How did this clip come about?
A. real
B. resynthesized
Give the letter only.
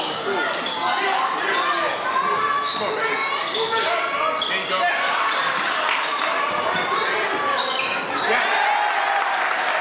A